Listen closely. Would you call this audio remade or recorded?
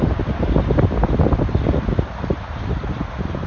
recorded